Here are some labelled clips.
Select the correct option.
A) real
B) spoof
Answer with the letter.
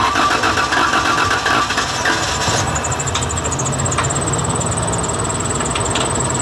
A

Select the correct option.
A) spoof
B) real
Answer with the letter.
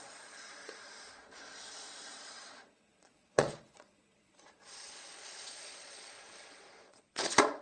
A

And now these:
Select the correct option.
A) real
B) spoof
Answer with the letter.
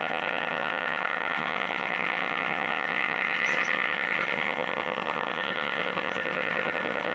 B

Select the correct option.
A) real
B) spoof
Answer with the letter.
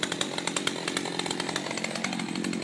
A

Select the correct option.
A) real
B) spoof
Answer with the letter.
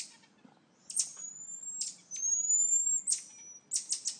A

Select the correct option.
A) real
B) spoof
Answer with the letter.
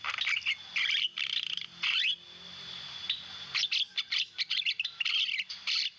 A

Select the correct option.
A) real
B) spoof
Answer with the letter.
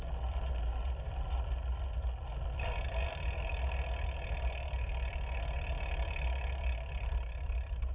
A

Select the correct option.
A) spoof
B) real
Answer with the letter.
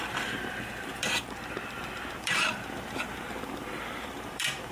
A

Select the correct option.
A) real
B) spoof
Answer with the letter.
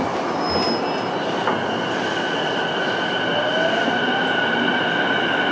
A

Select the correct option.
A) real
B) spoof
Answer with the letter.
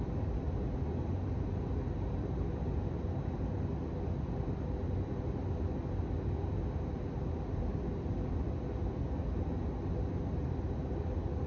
A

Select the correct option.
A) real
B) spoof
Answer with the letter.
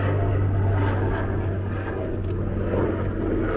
A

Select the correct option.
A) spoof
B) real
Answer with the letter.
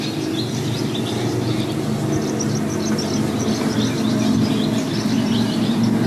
B